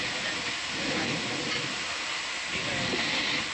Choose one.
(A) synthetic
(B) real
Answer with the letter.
B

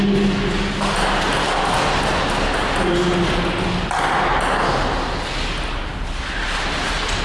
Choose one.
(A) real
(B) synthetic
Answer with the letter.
A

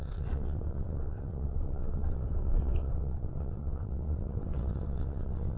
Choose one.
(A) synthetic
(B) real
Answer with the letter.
A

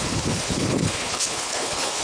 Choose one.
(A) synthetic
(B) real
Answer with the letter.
A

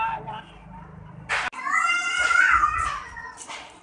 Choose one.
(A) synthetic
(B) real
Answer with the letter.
B